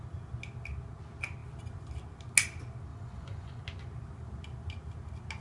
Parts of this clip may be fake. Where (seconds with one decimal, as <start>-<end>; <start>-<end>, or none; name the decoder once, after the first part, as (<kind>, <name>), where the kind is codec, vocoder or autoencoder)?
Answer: 2.9-3.6 (vocoder, Vocos)